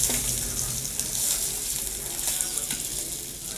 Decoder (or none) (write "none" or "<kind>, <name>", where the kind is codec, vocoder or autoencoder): none